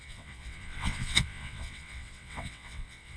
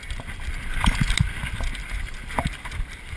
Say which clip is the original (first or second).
second